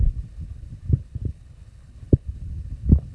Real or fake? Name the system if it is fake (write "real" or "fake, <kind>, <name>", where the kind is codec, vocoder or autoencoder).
fake, codec, HILCodec